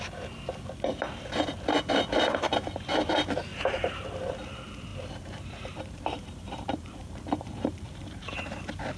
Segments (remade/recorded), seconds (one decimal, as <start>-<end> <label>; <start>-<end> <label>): 0.0-3.5 recorded; 3.5-4.3 remade; 4.3-4.9 recorded; 4.9-8.6 remade; 8.6-9.0 recorded